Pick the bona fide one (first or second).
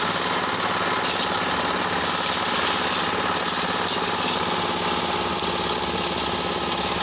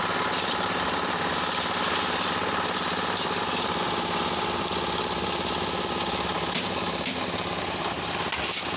first